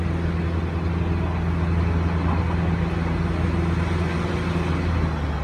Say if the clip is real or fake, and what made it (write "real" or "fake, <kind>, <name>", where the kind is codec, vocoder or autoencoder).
real